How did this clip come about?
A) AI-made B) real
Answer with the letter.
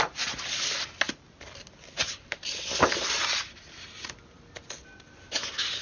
B